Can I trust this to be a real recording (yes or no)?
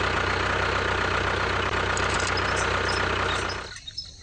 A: yes